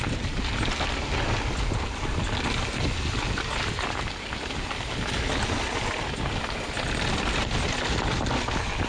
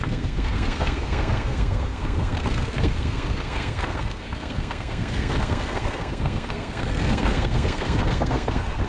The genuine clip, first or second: first